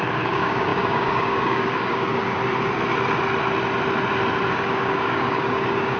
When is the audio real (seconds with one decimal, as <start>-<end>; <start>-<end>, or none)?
2.4-4.5

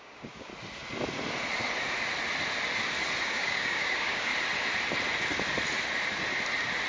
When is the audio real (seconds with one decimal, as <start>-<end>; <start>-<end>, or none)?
0.5-3.2; 4.3-6.9

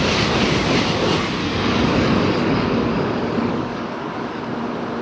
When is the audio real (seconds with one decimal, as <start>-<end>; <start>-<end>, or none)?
0.0-1.4; 4.4-5.0

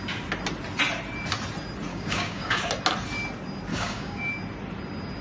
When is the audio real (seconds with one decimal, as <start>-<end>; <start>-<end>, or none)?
0.0-1.9; 2.7-3.7; 4.3-5.2

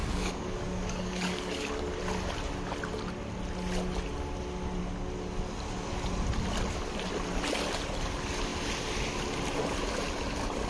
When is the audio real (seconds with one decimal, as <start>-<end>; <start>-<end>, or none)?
1.9-10.7